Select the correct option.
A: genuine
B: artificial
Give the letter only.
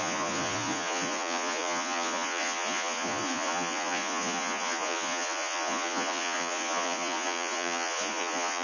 B